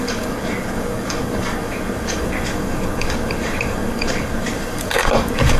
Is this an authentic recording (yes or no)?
no